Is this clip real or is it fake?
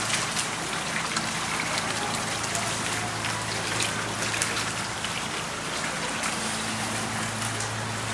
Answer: real